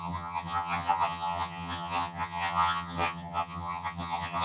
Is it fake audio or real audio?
fake